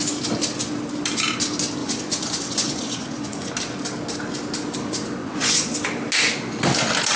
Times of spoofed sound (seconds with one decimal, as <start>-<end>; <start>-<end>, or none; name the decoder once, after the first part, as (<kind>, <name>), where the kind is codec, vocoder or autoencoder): 1.8-3.5 (vocoder, Vocos); 5.2-5.7